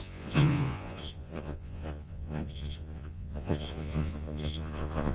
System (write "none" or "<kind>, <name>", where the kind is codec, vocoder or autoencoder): vocoder, Vocos